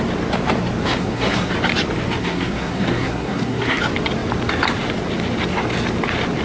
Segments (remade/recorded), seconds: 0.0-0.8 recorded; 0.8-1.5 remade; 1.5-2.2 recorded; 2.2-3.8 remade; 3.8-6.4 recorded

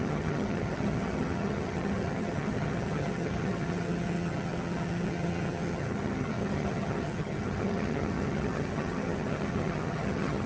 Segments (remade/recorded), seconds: 0.0-10.5 remade

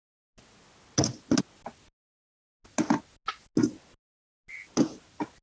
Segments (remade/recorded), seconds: 0.0-5.4 recorded